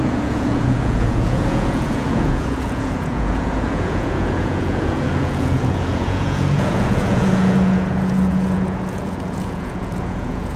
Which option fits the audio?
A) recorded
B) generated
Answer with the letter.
B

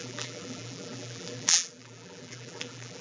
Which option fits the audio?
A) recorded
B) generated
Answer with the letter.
B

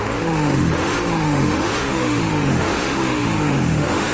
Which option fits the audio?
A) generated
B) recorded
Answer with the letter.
A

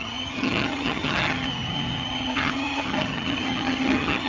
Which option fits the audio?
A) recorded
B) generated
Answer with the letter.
B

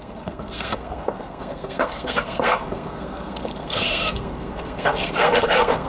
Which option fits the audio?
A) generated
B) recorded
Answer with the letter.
A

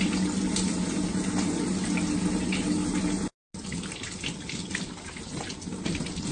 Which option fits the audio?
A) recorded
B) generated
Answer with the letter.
A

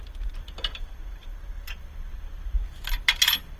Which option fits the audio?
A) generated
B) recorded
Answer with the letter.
B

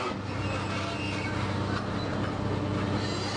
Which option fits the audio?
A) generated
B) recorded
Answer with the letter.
B